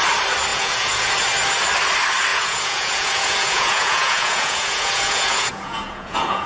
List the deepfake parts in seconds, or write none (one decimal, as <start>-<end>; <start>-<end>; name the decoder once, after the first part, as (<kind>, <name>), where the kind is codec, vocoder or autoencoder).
0.5-1.1 (vocoder, Vocos); 2.3-6.5